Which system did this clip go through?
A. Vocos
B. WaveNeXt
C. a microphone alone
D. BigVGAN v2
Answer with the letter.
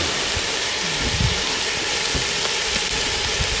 D